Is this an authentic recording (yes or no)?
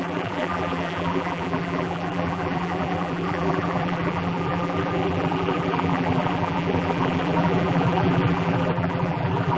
no